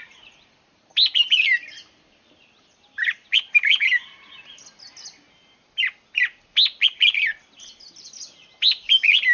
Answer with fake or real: real